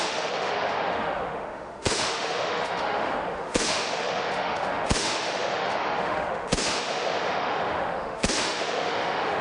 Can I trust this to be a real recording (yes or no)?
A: no